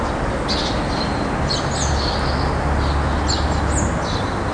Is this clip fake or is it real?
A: real